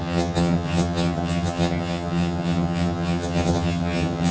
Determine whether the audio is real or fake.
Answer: fake